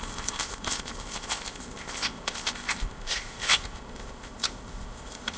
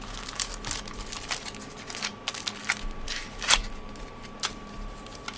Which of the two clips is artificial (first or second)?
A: first